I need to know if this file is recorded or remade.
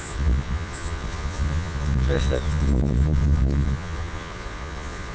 remade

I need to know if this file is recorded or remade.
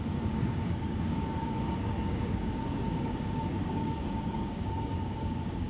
remade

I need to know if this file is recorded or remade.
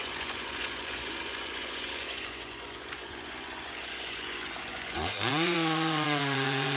remade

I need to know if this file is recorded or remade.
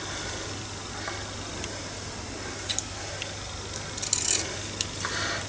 recorded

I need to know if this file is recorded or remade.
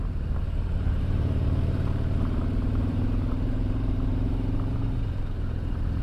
remade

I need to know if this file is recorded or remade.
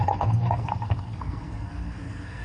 remade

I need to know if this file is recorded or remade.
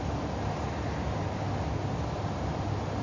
recorded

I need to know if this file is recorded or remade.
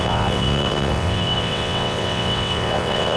remade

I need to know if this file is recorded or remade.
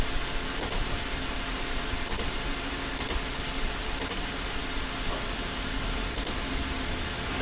remade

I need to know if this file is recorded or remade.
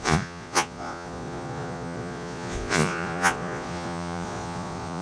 remade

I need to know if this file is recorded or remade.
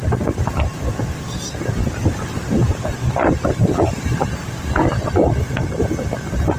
recorded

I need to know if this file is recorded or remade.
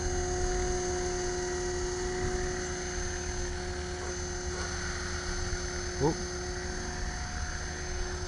recorded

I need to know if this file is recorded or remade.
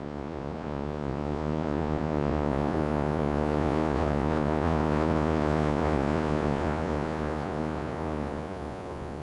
remade